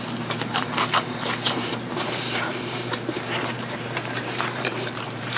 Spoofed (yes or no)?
yes